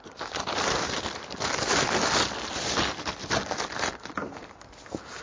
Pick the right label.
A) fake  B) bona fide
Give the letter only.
B